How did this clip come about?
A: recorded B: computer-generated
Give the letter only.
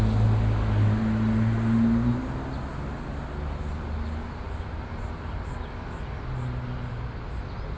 A